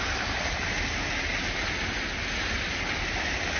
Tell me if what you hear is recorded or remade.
recorded